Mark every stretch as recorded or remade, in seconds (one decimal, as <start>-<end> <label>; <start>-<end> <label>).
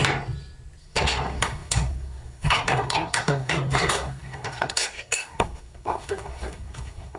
0.0-0.8 recorded; 0.8-7.2 remade